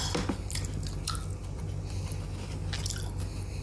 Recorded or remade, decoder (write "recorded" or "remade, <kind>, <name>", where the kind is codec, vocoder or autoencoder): recorded